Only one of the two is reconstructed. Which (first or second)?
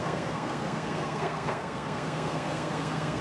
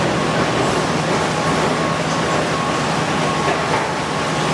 first